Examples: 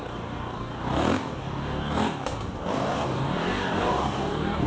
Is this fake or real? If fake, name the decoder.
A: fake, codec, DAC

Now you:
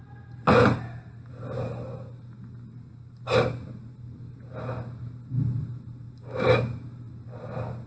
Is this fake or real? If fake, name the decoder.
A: real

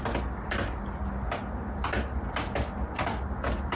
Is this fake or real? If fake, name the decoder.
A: real